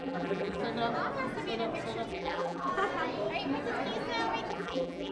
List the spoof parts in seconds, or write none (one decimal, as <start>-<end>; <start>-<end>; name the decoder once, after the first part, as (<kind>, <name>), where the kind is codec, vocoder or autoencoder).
0.0-0.6 (vocoder, BigVGAN v2); 2.1-2.7; 4.5-5.1